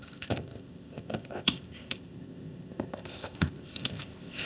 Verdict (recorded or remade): remade